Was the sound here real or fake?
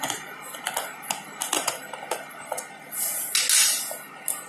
real